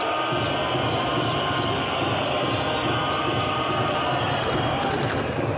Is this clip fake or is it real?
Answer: real